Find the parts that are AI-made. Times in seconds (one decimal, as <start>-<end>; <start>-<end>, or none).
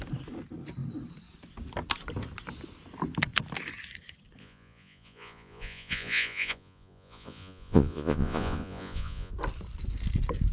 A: 4.4-9.3